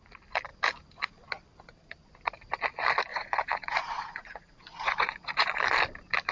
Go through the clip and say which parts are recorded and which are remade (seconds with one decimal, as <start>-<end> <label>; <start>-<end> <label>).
0.0-3.1 recorded; 3.1-5.6 remade; 5.6-6.3 recorded